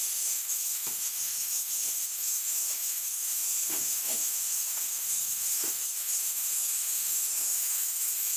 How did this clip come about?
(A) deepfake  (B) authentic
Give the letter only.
A